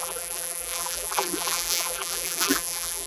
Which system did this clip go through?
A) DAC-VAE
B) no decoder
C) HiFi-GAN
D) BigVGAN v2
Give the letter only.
D